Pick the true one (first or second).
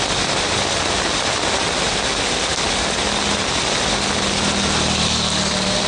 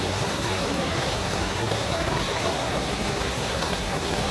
first